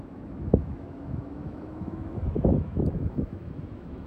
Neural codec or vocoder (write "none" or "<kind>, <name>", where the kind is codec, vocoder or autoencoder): autoencoder, DAC-VAE